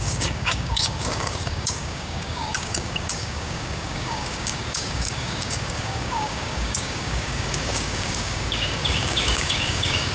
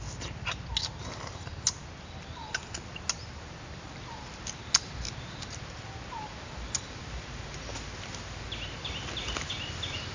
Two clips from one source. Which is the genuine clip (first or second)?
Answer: second